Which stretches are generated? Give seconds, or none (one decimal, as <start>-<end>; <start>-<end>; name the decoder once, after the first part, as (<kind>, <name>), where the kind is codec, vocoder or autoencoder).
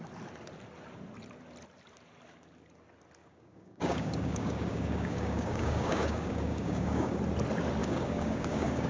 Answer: 3.2-7.2 (codec, DAC); 7.8-8.9